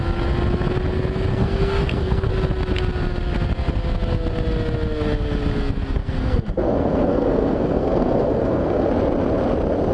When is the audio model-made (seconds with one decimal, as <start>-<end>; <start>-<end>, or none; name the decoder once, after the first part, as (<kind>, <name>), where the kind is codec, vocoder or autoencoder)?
1.3-2.3 (codec, SNAC); 6.0-8.9